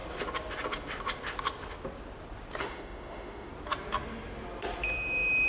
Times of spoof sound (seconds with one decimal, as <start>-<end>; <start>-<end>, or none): 2.6-3.5